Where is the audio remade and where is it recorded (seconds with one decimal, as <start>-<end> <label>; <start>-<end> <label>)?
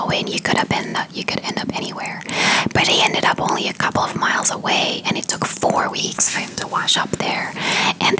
0.0-6.0 recorded; 6.0-6.9 remade; 6.9-8.2 recorded